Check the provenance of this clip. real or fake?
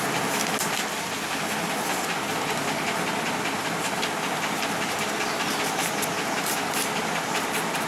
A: real